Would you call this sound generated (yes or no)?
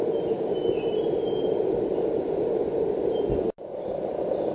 no